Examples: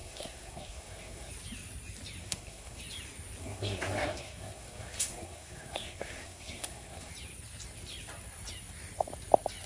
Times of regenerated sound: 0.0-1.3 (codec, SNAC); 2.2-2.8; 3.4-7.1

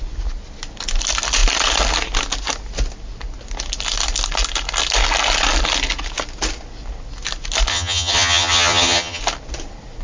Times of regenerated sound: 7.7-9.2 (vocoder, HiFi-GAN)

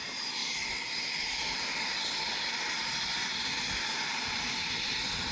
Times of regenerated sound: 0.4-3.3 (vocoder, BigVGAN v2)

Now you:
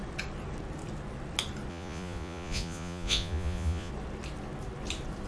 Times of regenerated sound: 1.7-3.9 (vocoder, Vocos)